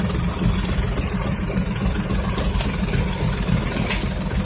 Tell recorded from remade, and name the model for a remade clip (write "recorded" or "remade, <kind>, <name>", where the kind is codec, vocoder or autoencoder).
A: recorded